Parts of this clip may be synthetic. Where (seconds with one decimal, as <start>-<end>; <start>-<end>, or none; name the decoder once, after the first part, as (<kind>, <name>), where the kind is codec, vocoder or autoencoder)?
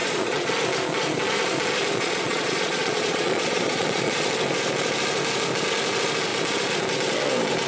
0.0-0.5 (vocoder, Vocos); 1.9-4.3